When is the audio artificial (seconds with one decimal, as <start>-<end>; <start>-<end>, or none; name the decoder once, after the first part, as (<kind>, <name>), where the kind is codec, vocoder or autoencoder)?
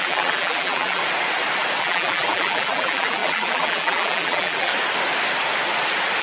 0.0-1.0 (vocoder, BigVGAN v2); 1.8-4.7